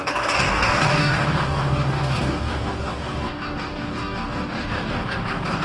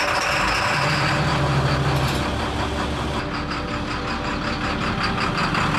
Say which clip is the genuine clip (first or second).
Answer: second